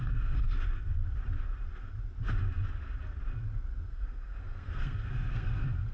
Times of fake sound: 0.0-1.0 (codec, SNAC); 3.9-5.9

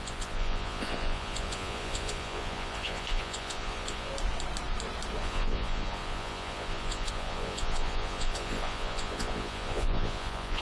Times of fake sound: 0.0-4.1 (vocoder, Vocos); 5.2-10.6

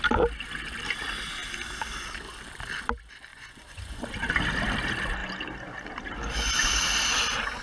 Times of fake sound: 3.3-4.1 (vocoder, Vocos)

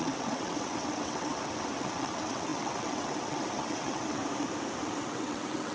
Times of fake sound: 0.0-4.2 (vocoder, WaveNeXt); 4.8-5.7

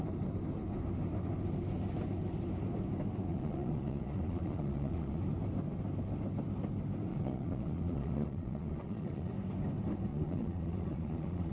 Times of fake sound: 3.3-5.2 (vocoder, Vocos); 7.1-9.3; 10.1-11.5

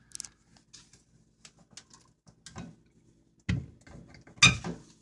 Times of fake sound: none

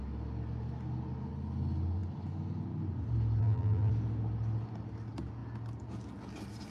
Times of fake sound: 3.4-3.9 (vocoder, BigVGAN v2)

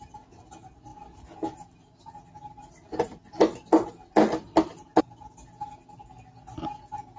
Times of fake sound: none